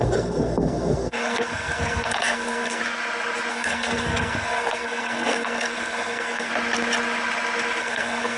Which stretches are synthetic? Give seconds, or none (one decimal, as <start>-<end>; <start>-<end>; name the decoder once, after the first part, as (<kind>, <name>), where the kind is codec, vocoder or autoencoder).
0.0-2.8 (codec, SNAC); 3.5-6.5; 7.8-8.4